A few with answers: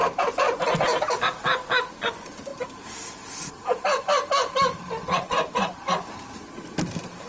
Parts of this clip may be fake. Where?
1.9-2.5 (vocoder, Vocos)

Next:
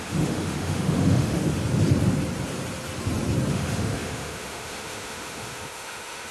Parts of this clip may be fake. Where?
0.0-1.4 (autoencoder, DAC-VAE); 3.5-6.3

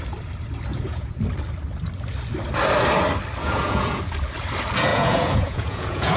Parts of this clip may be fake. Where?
0.7-1.2 (vocoder, Vocos); 3.4-4.0; 4.9-6.2